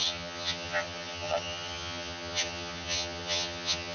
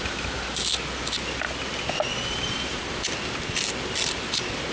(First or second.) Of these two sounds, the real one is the second